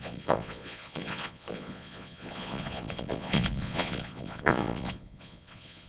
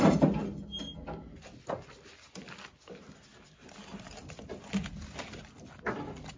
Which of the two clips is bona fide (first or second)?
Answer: second